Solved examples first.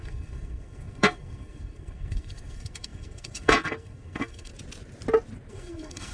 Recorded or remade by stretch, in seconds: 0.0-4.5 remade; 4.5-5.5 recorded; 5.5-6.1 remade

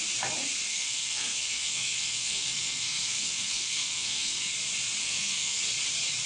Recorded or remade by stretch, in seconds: 0.0-0.7 recorded; 0.7-4.5 remade; 4.5-5.0 recorded; 5.0-5.6 remade; 5.6-6.3 recorded